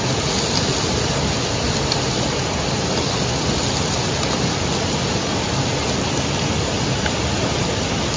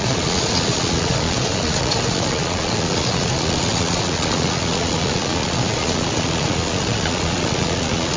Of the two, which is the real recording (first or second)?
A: first